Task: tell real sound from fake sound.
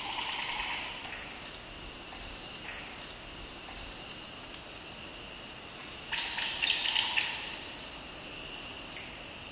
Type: real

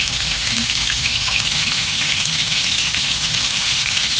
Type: fake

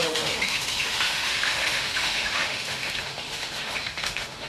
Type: fake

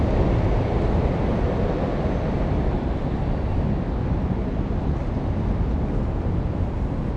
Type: real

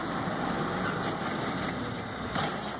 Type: real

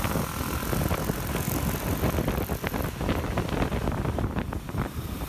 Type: real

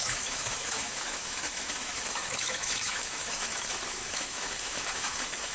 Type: fake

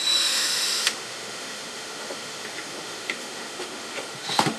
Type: fake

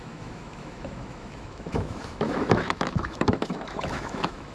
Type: fake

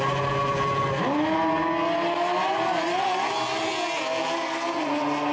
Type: real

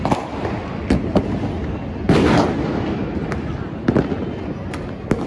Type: real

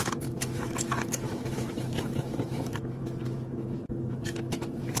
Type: fake